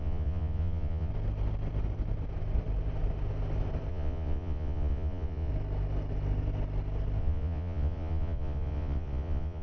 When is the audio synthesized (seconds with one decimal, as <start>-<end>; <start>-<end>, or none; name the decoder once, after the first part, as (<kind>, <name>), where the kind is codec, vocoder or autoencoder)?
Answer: 0.0-1.1 (vocoder, Vocos); 3.9-5.5; 7.2-9.6

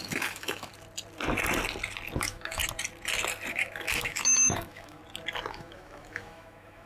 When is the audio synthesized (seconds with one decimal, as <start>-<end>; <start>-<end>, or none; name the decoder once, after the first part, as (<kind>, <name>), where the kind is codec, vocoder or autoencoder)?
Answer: 0.0-0.7 (autoencoder, DAC-VAE); 2.2-2.6; 3.5-5.0; 5.5-6.9

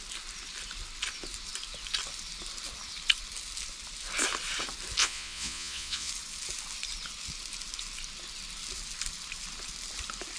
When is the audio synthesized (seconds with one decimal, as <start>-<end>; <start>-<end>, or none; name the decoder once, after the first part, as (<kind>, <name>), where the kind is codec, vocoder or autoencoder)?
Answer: 5.0-6.1 (vocoder, Vocos)